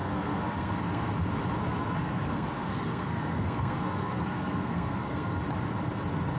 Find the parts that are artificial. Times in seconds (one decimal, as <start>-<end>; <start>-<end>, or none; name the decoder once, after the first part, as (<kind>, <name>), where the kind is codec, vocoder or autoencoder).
0.0-1.1 (codec, SNAC); 1.6-5.4